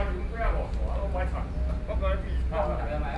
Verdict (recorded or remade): recorded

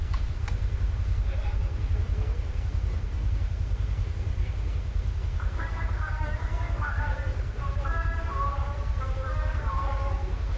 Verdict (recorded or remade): remade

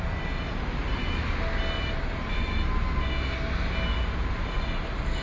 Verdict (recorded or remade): recorded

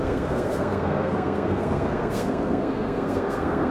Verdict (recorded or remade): remade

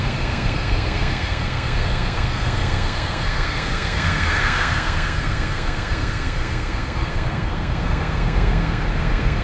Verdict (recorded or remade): remade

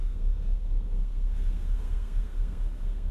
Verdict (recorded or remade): remade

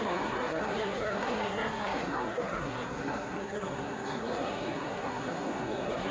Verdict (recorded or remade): remade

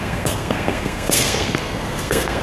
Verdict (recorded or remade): remade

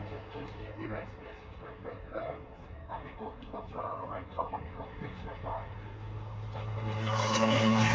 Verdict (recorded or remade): remade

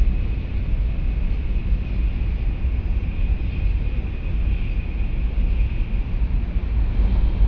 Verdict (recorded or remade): recorded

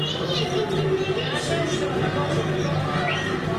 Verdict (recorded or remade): recorded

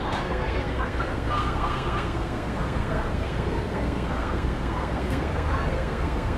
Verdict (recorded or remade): remade